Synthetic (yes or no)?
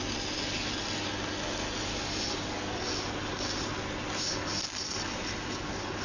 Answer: no